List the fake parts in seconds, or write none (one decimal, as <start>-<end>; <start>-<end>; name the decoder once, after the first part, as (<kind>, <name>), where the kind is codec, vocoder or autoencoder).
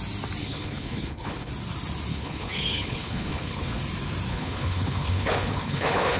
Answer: 0.4-1.5 (codec, HILCodec); 2.1-3.8; 4.3-6.2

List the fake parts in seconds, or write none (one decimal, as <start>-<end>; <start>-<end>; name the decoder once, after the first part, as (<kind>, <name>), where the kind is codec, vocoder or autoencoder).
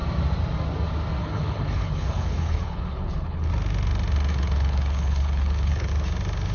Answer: 1.2-3.5 (codec, HILCodec); 4.3-5.9